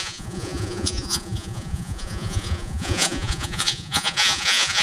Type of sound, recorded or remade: remade